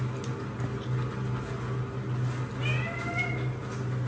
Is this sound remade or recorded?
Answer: recorded